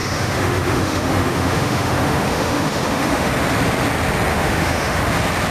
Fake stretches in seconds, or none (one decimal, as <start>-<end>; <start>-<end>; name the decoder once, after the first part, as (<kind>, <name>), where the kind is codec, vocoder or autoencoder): 0.0-3.3 (autoencoder, DAC-VAE); 4.3-5.0